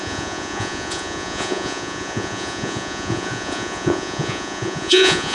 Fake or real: fake